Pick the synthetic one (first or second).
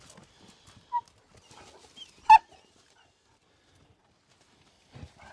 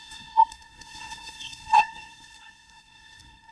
second